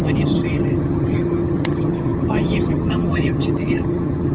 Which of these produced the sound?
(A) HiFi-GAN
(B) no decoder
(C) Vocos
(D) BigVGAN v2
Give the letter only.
A